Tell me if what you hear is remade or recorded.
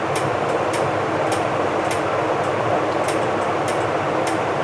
recorded